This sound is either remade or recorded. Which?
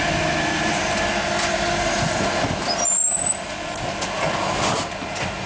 recorded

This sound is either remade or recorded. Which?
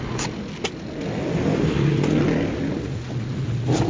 recorded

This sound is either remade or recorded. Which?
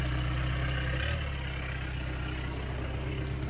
recorded